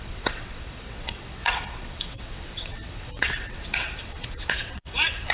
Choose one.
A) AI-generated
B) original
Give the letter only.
A